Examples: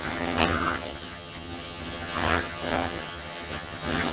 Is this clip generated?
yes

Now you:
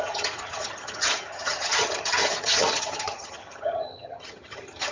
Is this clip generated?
yes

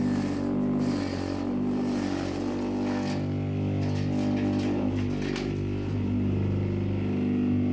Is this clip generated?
no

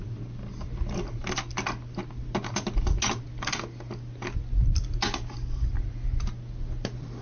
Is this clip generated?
no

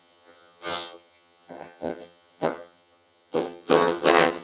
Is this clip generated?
yes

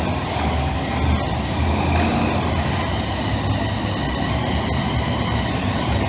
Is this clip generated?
no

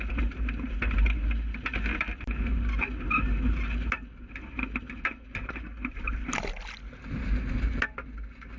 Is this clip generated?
no